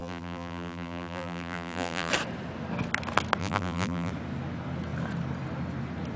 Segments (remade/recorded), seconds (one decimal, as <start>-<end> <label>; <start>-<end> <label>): 0.0-2.1 remade; 2.1-3.4 recorded; 3.4-4.1 remade; 4.1-6.2 recorded